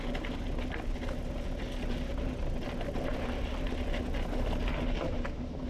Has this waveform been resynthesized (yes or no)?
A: no